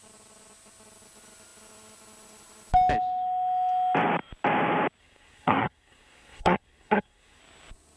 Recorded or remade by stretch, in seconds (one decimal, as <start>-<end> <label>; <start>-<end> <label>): 0.0-5.0 recorded; 5.0-7.4 remade; 7.4-8.0 recorded